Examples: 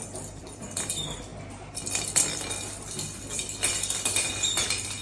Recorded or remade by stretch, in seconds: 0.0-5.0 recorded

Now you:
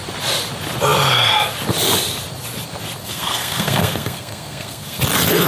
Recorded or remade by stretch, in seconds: 0.0-3.0 recorded; 3.0-5.0 remade; 5.0-5.5 recorded